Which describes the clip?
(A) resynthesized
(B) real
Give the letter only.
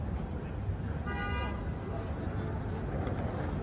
B